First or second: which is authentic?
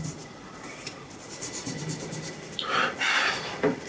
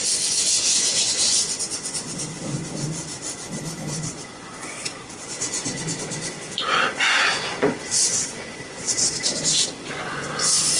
first